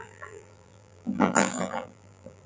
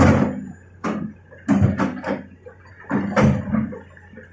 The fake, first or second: first